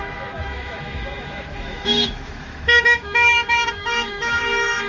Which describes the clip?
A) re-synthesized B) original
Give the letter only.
A